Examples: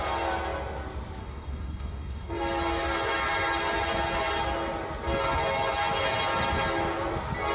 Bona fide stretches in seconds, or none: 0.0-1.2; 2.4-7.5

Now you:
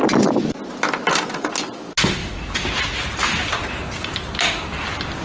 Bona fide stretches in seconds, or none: 0.0-5.2